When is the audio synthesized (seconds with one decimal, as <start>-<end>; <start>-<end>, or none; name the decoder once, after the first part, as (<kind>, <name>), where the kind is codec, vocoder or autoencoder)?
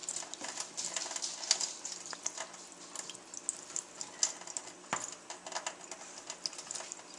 none